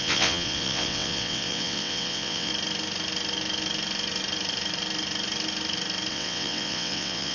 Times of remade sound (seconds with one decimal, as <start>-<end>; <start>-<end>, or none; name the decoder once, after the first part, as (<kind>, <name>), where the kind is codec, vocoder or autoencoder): 0.0-2.5 (vocoder, WaveNeXt); 6.1-7.3